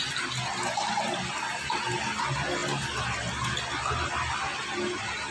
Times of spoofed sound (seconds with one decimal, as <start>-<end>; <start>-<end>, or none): none